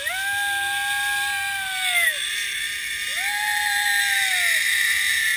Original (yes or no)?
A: yes